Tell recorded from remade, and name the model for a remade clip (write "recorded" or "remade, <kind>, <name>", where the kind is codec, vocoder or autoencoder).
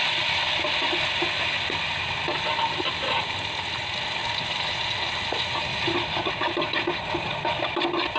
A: recorded